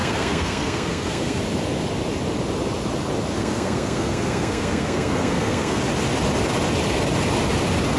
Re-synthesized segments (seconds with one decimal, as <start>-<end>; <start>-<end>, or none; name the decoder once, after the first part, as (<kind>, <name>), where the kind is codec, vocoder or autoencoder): 0.0-1.4 (codec, SNAC); 3.4-5.8